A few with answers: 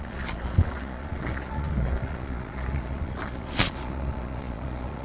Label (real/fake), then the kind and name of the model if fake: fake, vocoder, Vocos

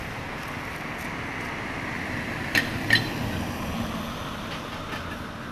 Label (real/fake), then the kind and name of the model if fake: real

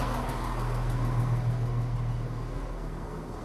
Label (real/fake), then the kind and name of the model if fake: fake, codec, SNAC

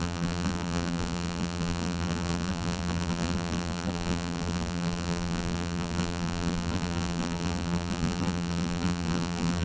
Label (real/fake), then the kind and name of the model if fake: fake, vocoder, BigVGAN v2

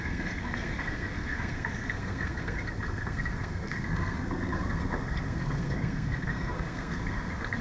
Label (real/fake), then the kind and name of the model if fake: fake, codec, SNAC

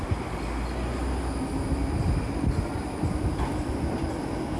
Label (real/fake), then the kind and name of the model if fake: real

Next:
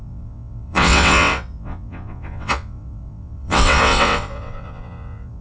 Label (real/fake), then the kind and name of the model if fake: fake, vocoder, WaveNeXt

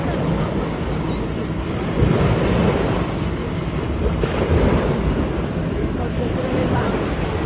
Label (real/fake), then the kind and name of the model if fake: real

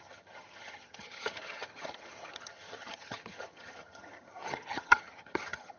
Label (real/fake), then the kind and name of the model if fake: fake, vocoder, HiFi-GAN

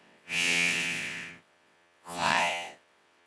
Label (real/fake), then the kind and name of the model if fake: fake, vocoder, WaveNeXt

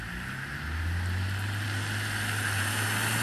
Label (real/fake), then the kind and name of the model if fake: real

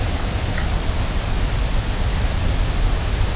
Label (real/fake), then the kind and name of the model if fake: real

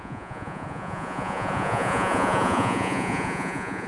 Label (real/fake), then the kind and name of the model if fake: fake, vocoder, Vocos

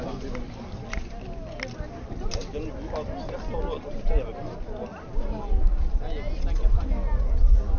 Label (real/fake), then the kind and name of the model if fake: real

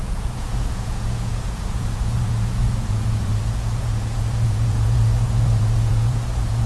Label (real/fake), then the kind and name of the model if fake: fake, vocoder, Vocos